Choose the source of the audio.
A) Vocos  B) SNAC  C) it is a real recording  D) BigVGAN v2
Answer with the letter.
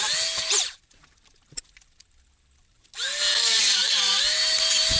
C